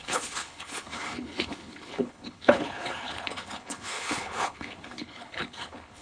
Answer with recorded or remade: remade